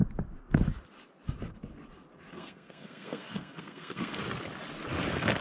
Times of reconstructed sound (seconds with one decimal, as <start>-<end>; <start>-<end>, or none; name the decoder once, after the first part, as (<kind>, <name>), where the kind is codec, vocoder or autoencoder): 2.3-4.2 (codec, SNAC)